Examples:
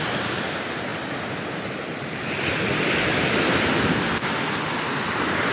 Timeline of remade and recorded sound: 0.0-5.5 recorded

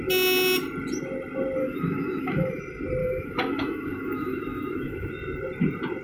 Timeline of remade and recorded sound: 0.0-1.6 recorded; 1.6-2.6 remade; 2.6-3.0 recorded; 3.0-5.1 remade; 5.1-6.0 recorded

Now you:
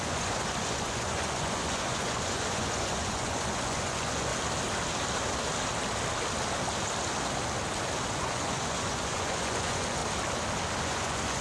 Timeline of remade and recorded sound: 0.0-4.3 remade; 4.3-8.1 recorded; 8.1-10.0 remade; 10.0-10.8 recorded; 10.8-11.4 remade

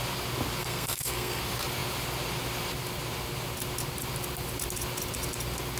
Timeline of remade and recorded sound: 0.0-0.6 recorded; 0.6-1.4 remade; 1.4-5.8 recorded

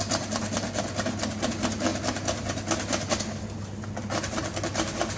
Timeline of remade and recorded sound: 0.0-5.2 recorded

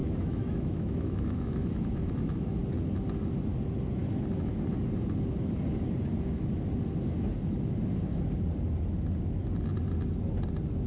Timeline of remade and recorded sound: 0.0-2.6 remade; 2.6-10.9 recorded

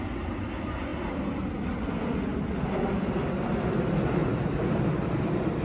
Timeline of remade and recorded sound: 0.0-0.9 recorded; 0.9-1.5 remade; 1.5-2.3 recorded; 2.3-3.2 remade; 3.2-4.2 recorded; 4.2-5.6 remade